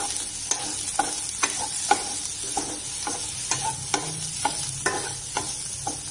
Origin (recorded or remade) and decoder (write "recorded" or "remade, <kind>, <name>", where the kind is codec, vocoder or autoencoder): recorded